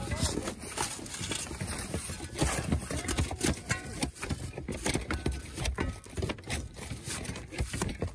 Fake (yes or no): no